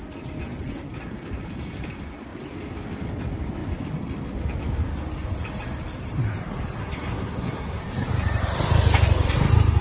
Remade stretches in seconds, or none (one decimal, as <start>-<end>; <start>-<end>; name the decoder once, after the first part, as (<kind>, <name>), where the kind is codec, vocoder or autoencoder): 6.8-7.8 (codec, SNAC)